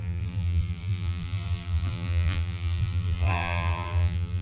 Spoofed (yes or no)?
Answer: yes